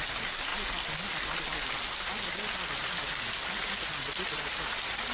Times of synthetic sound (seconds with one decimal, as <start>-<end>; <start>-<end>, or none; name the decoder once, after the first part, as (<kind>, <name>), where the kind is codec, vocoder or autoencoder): none